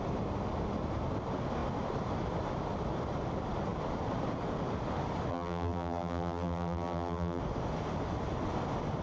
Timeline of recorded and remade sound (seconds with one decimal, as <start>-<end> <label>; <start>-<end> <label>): 0.0-5.3 recorded; 5.3-7.4 remade; 7.4-9.0 recorded